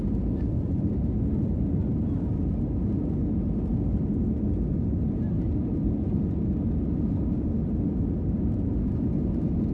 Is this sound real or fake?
real